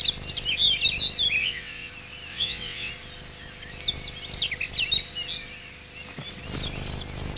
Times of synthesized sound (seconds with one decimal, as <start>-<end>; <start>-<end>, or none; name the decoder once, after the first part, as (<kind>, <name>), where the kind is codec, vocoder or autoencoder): 1.4-1.9 (vocoder, WaveNeXt); 2.3-2.9